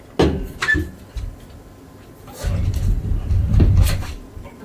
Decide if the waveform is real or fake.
real